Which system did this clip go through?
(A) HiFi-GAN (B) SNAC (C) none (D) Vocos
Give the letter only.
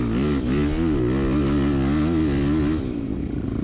C